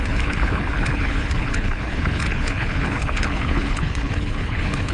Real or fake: fake